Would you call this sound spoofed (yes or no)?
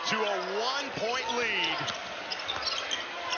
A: no